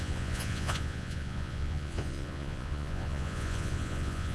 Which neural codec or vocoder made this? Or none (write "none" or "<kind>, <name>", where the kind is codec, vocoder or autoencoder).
vocoder, Vocos